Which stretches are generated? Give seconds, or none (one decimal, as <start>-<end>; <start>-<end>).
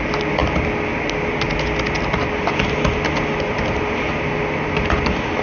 none